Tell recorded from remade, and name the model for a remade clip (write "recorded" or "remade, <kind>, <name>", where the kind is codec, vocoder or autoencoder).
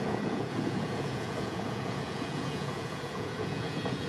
remade, vocoder, Vocos